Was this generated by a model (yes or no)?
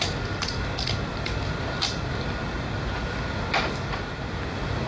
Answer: no